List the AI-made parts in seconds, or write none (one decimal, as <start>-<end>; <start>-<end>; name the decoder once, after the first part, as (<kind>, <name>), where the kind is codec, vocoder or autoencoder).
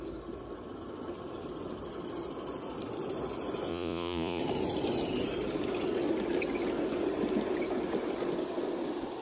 3.7-4.4 (vocoder, Vocos)